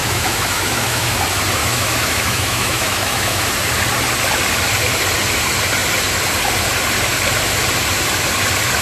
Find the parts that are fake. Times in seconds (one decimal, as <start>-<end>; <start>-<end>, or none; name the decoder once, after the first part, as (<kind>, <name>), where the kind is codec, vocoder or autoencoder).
0.0-1.2 (autoencoder, DAC-VAE); 1.6-3.4